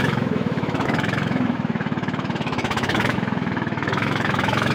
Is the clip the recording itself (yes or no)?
no